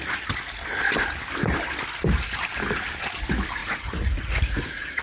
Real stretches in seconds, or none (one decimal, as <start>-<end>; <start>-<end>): 0.0-3.6